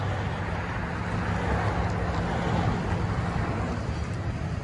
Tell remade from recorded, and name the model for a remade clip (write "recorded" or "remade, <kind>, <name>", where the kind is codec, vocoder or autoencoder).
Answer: recorded